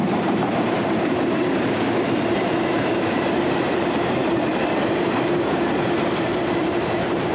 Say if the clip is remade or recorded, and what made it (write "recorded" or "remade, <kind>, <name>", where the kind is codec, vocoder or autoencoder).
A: remade, vocoder, BigVGAN v2